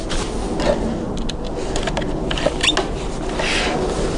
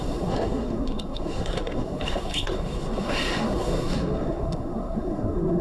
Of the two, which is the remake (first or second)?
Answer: second